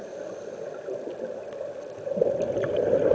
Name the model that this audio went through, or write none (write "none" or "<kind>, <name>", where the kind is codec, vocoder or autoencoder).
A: none